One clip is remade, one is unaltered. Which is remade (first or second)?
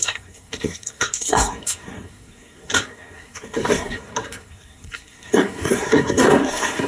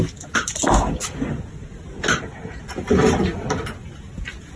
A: first